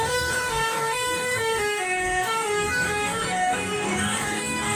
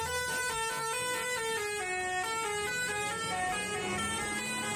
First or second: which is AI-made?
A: first